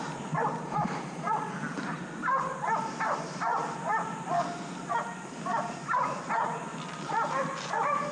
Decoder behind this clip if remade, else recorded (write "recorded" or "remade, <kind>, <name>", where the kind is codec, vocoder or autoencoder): recorded